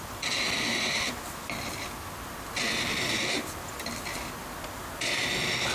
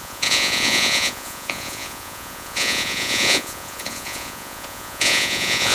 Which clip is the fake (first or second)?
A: second